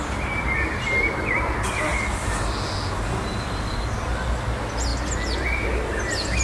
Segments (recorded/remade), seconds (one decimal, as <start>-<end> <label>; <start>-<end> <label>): 0.0-6.4 recorded